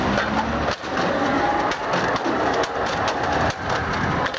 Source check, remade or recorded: recorded